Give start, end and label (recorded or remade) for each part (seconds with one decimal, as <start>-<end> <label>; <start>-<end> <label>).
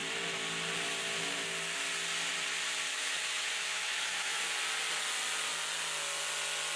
0.0-2.9 recorded; 2.9-4.4 remade; 4.4-6.8 recorded